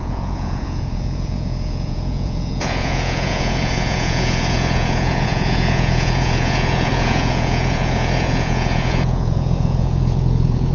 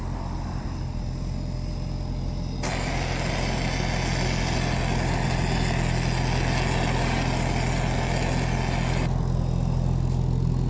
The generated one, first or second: first